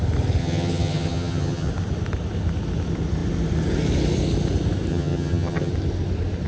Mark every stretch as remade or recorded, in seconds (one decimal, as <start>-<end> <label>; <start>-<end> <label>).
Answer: 0.0-0.4 recorded; 0.4-1.7 remade; 1.7-4.9 recorded; 4.9-5.7 remade; 5.7-6.5 recorded